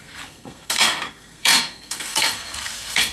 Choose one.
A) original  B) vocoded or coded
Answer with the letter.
B